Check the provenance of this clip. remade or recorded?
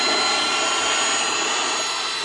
recorded